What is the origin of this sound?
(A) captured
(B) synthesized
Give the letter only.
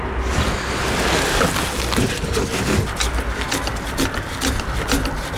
A